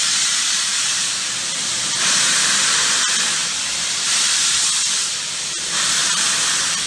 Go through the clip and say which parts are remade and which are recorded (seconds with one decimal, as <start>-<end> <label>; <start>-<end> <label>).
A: 0.0-6.9 recorded